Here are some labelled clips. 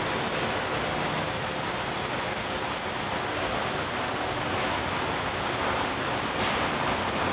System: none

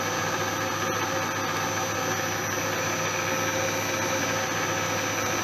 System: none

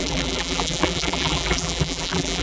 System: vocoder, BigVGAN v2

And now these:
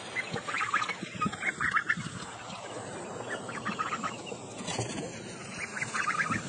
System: none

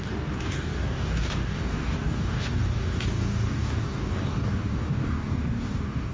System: codec, DAC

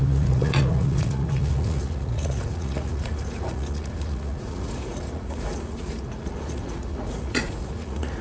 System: vocoder, Vocos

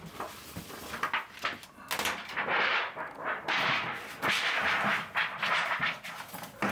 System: none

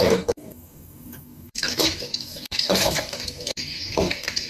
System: codec, DAC